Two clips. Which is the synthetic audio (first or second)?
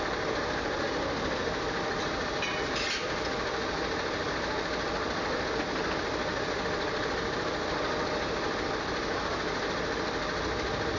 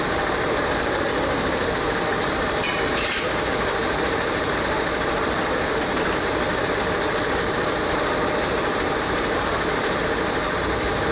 second